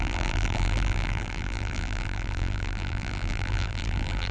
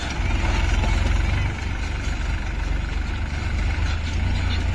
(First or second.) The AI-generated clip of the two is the first